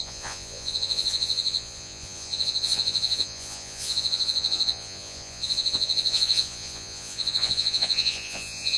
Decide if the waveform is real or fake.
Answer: fake